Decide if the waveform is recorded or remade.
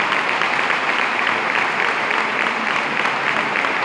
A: recorded